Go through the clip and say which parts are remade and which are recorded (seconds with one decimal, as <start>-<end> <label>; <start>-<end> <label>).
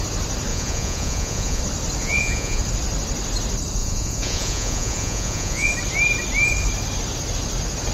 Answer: 0.0-0.5 recorded; 0.5-1.6 remade; 1.6-2.0 recorded; 2.0-2.6 remade; 2.6-3.8 recorded; 3.8-5.7 remade; 5.7-7.9 recorded